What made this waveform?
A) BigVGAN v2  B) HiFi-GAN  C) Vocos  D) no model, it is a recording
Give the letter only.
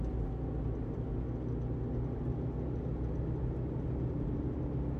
D